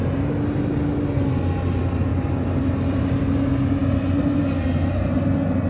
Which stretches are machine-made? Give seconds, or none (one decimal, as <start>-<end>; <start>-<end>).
none